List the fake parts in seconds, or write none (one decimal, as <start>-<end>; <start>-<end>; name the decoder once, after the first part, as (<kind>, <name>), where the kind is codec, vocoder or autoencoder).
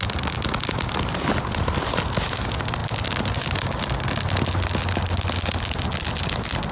none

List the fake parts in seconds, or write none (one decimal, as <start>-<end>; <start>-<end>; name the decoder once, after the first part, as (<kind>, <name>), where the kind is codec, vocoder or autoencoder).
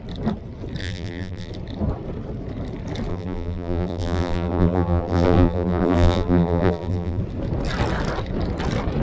0.8-1.5 (vocoder, BigVGAN v2); 3.1-7.2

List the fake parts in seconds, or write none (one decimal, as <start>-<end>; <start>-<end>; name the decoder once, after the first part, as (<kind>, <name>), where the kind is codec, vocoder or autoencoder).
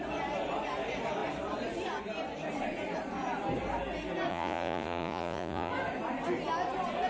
4.3-5.7 (vocoder, Vocos)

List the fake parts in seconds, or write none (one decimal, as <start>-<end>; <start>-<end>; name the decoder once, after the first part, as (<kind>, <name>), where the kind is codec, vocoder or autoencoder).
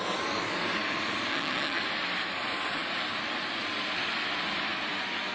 1.3-1.8 (vocoder, HiFi-GAN)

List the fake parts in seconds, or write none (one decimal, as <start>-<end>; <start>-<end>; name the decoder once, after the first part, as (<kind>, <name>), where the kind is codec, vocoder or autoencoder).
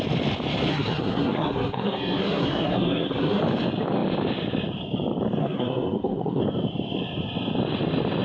0.7-3.4 (codec, SNAC); 5.4-6.4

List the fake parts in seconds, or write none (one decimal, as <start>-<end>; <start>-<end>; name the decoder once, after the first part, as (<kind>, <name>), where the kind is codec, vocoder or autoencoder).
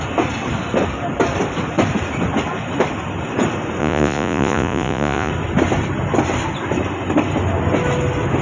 3.8-5.3 (vocoder, Vocos)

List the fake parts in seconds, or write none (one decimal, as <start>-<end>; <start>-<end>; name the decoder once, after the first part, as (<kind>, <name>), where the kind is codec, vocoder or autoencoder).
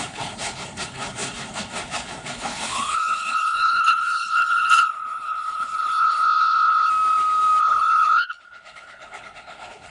0.0-6.9 (codec, HILCodec); 7.6-9.9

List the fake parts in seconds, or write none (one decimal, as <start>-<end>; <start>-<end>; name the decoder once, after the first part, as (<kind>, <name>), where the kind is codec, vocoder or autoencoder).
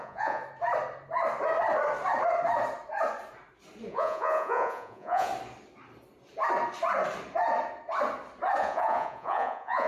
0.0-0.4 (vocoder, Vocos); 3.9-5.3; 8.6-9.9